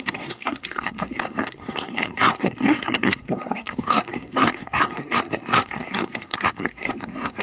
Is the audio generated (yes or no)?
yes